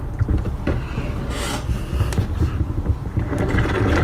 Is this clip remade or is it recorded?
recorded